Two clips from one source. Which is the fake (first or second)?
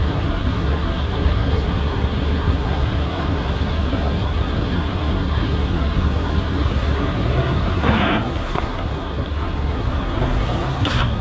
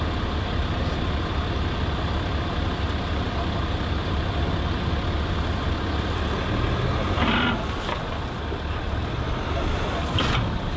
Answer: first